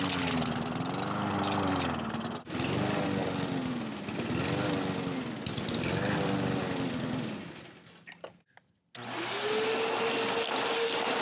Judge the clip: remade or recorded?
recorded